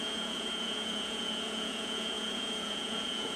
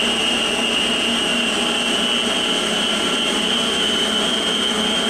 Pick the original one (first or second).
second